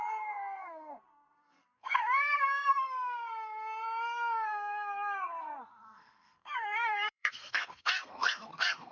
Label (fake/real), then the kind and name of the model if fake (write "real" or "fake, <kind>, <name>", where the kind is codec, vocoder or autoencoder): fake, codec, SNAC